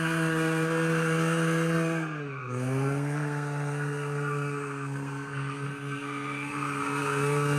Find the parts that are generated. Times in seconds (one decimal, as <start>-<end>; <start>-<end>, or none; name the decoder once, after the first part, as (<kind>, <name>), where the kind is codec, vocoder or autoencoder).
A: 0.0-7.6 (codec, SNAC)